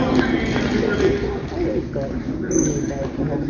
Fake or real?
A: real